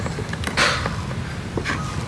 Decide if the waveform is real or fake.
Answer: real